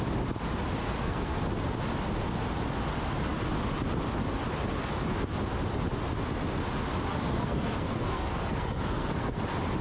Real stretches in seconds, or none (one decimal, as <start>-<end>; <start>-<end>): 0.0-0.8; 1.4-7.1; 9.4-9.8